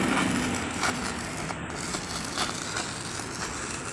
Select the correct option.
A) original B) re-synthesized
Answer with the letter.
A